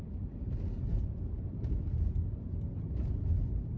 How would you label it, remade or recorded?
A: recorded